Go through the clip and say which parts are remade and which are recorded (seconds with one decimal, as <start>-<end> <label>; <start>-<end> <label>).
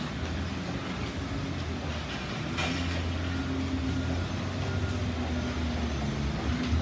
0.0-6.8 recorded